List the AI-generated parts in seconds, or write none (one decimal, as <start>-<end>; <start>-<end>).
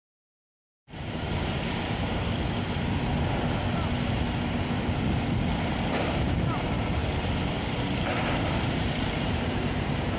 0.0-2.2; 6.0-7.0; 8.4-10.2